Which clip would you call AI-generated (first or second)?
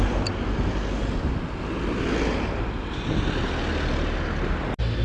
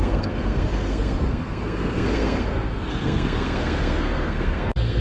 second